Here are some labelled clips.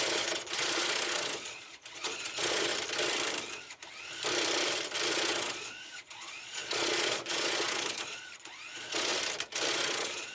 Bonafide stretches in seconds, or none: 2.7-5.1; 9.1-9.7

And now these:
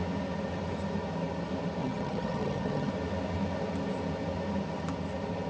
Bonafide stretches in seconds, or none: 0.0-1.8; 2.9-5.5

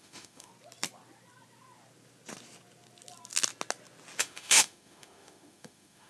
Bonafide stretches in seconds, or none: 0.5-4.2